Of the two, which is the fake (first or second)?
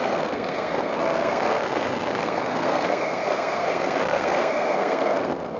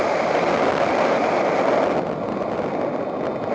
first